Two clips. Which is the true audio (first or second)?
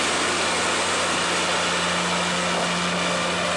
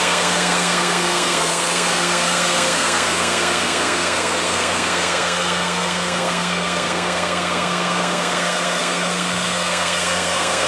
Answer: first